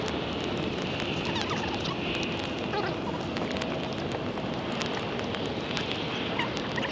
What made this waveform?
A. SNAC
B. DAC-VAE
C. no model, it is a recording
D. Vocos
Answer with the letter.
C